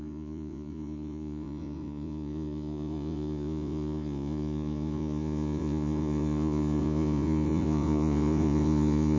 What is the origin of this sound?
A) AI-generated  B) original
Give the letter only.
A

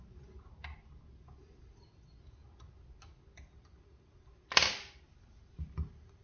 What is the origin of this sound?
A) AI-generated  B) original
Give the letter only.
B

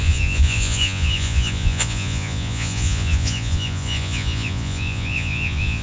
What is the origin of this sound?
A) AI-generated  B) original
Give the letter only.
A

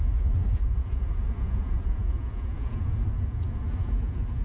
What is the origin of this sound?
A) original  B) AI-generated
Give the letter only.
B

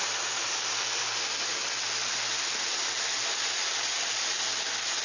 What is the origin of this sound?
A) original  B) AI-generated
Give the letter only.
A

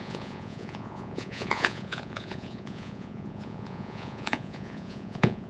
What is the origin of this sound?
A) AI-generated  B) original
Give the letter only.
A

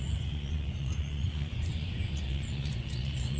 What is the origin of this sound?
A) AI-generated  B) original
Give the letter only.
A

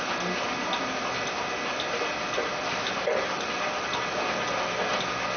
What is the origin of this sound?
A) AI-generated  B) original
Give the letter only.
B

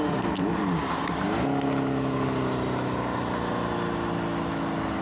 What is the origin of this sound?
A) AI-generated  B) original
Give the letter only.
B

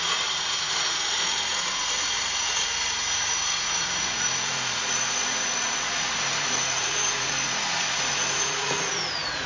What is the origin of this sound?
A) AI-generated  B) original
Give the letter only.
A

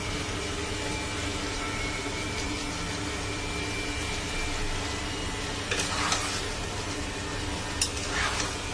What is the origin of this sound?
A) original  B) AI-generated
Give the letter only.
A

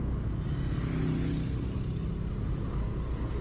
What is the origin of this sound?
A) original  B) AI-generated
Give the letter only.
A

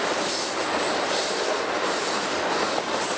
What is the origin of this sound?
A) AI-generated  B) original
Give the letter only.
B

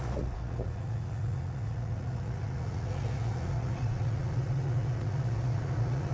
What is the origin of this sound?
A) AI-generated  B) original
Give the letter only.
A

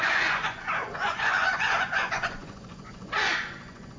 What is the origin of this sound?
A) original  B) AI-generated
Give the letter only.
B